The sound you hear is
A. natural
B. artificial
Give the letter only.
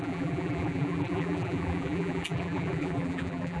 B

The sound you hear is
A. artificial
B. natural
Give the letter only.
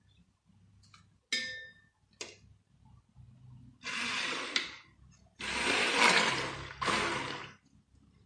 B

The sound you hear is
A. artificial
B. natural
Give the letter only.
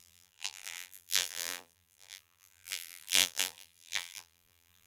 A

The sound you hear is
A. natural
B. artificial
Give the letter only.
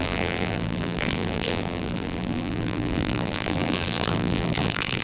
B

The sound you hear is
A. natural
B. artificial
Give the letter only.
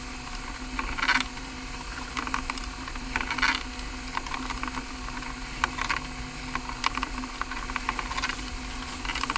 A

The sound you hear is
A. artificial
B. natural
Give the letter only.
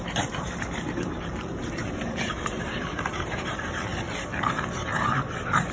A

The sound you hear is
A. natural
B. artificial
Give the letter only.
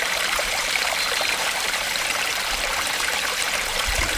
B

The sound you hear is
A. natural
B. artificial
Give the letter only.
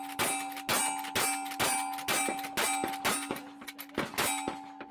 A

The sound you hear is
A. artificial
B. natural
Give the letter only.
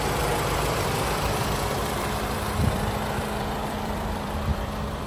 A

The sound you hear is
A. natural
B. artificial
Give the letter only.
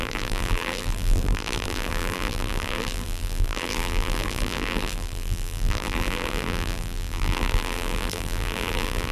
B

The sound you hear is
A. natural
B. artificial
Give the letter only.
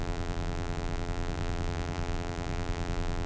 B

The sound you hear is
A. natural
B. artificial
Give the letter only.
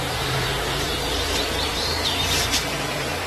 B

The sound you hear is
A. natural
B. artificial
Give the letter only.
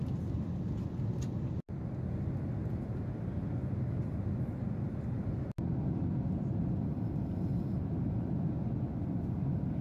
A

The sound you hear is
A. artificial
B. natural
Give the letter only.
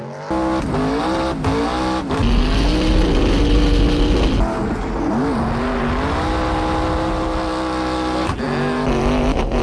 B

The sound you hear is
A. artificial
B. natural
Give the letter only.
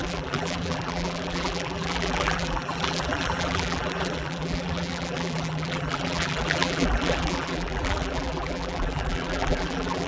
A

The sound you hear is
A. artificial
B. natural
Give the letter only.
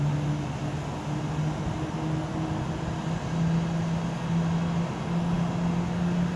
B